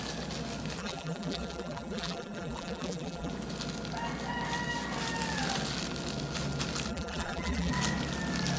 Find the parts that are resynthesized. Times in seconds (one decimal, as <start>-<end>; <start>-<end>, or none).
0.8-3.3; 6.9-7.7